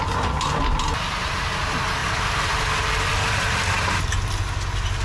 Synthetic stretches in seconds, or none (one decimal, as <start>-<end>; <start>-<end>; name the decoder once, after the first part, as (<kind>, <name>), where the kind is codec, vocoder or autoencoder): 2.0-4.1 (vocoder, BigVGAN v2)